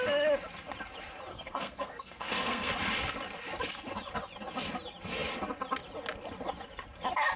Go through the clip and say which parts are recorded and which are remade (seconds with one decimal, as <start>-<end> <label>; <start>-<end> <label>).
0.0-1.3 recorded; 1.3-2.7 remade; 2.7-7.4 recorded